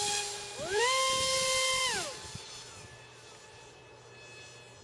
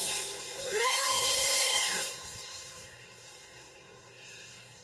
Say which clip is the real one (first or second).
first